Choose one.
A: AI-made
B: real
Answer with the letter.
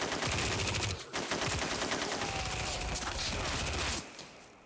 B